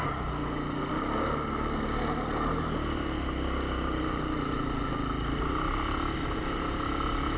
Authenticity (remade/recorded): recorded